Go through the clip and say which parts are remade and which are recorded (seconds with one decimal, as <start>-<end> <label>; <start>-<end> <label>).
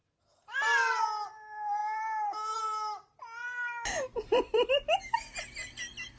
0.0-1.0 remade; 1.0-1.8 recorded; 1.8-4.7 remade; 4.7-6.2 recorded